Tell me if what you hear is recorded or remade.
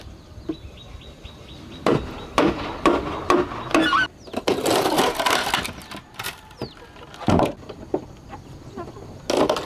recorded